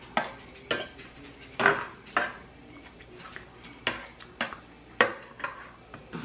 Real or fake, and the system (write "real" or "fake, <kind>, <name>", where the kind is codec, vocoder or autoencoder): real